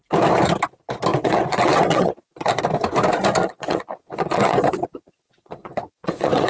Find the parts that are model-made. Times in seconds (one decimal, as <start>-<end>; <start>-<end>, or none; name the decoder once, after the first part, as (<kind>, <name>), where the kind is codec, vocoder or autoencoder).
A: 1.1-2.6 (vocoder, WaveNeXt); 3.4-6.5